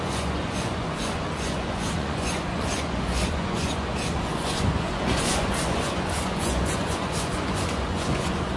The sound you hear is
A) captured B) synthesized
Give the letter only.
B